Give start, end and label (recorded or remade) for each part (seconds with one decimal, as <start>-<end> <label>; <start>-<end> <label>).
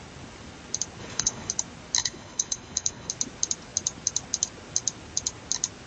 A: 0.0-1.0 recorded; 1.0-1.5 remade; 1.5-2.0 recorded; 2.0-3.1 remade; 3.1-5.9 recorded